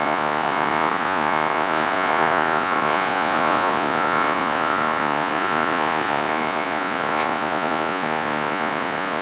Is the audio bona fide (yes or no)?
no